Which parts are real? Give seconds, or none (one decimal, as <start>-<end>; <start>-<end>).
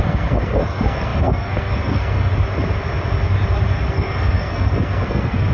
2.3-3.9